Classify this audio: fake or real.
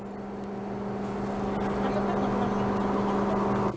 real